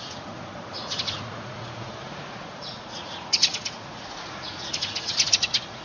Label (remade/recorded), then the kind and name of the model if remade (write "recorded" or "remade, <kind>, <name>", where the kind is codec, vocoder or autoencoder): remade, vocoder, Vocos